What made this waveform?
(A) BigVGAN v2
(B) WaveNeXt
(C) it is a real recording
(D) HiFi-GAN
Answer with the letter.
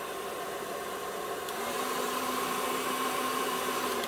A